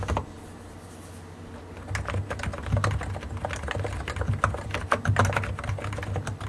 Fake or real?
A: real